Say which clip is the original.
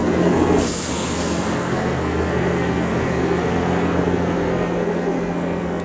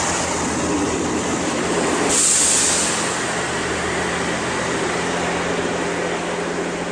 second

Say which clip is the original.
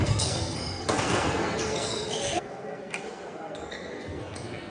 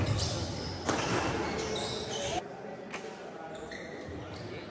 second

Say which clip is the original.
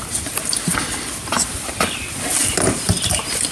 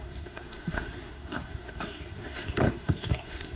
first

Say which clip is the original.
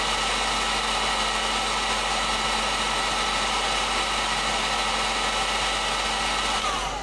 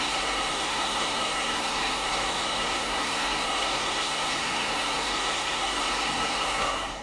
first